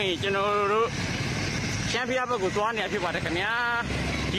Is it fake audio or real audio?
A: real